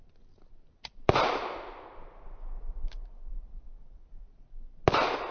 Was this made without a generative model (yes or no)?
yes